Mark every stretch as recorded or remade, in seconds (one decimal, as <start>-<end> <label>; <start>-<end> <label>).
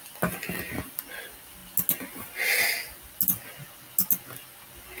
0.0-5.0 recorded